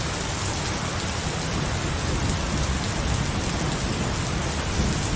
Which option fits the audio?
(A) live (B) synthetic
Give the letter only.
A